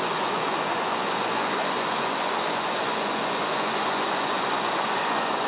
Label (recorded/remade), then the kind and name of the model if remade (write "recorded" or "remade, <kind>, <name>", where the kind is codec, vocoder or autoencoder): remade, vocoder, Vocos